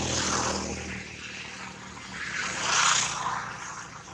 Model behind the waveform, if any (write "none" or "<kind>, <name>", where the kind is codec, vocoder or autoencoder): none